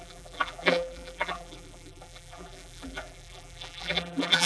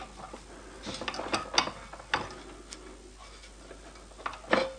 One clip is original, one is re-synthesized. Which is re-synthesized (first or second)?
first